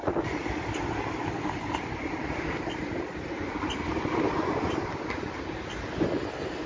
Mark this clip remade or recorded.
recorded